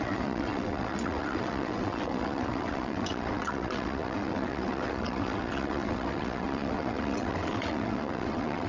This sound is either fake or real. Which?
fake